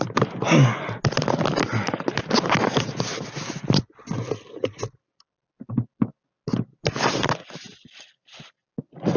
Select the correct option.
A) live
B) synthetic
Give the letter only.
A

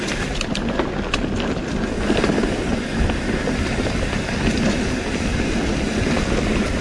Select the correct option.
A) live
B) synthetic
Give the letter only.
A